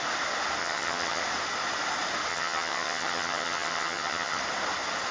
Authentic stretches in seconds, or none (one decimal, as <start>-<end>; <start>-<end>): 0.0-0.6; 1.2-2.3; 4.4-5.1